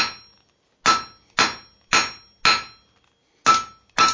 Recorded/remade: recorded